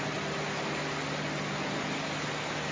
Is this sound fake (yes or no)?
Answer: no